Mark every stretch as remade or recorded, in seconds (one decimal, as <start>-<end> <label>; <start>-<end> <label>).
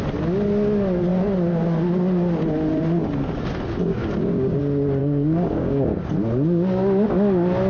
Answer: 0.0-3.8 recorded; 3.8-4.6 remade; 4.6-5.0 recorded; 5.0-6.1 remade; 6.1-7.7 recorded